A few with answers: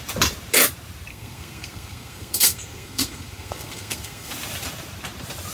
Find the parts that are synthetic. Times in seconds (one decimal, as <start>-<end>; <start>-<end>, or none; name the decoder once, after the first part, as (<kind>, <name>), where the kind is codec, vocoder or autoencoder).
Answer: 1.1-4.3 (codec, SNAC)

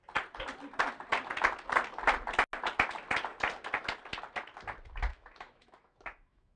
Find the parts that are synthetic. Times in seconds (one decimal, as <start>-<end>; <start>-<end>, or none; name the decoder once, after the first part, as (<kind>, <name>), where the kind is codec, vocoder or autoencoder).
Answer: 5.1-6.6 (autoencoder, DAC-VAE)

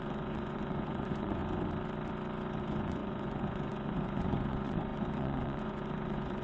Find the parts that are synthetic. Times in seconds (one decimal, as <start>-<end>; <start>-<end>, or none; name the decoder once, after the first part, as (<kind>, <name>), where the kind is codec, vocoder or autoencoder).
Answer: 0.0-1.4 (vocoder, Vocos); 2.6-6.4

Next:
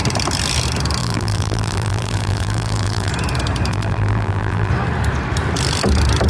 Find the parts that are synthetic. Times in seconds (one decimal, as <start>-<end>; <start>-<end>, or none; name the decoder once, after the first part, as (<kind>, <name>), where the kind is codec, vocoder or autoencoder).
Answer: 1.0-3.1 (vocoder, BigVGAN v2); 3.7-4.7

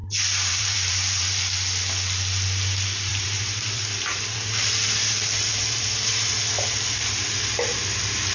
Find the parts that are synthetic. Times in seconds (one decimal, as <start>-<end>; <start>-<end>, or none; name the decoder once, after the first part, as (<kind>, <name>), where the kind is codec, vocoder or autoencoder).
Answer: 0.0-1.4 (vocoder, BigVGAN v2); 3.1-6.3

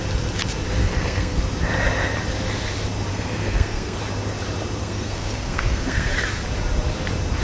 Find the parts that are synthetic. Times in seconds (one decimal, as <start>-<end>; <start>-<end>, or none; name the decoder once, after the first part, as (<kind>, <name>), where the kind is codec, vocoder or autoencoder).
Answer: 0.8-1.4 (codec, SNAC); 3.1-4.0; 4.8-6.1

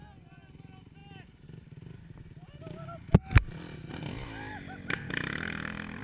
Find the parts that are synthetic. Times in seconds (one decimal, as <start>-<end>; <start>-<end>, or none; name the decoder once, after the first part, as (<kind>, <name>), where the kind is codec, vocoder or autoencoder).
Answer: none